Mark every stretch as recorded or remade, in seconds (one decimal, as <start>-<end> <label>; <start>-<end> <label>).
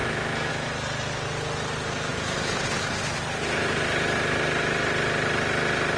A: 0.0-0.5 remade; 0.5-6.0 recorded